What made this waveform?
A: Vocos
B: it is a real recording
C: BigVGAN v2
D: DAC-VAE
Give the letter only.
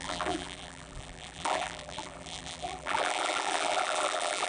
C